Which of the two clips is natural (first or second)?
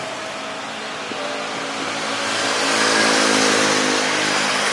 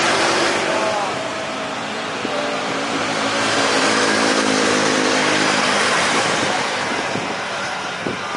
first